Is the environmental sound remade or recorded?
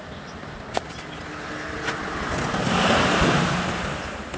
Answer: recorded